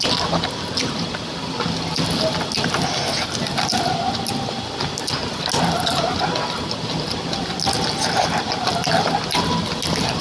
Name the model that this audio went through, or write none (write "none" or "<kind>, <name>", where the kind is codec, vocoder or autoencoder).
none